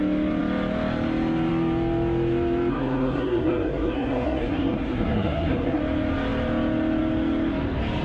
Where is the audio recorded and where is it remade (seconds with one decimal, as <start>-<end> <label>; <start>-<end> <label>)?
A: 0.0-2.7 recorded; 2.7-5.8 remade; 5.8-8.0 recorded